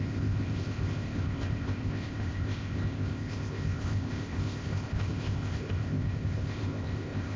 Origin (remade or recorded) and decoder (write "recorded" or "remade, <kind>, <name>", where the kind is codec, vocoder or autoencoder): remade, codec, ZipCodec